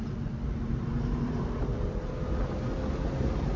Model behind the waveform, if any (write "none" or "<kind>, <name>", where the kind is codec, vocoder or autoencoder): vocoder, BigVGAN v2